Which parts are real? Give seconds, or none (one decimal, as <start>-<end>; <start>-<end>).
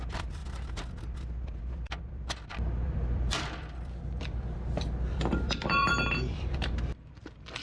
0.4-1.6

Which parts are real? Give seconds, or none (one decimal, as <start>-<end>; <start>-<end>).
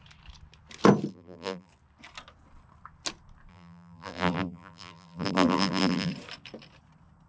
0.0-1.1; 1.7-3.5; 6.1-7.3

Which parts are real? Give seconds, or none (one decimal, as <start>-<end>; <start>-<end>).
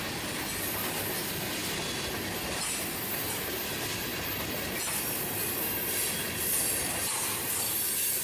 0.0-8.2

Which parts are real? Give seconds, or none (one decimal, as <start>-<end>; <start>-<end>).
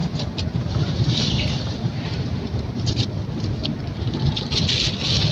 3.2-3.6; 4.1-5.3